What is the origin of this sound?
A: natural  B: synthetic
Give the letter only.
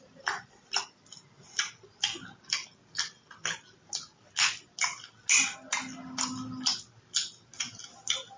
A